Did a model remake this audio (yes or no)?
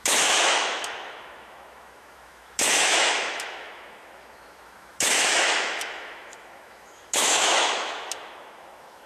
yes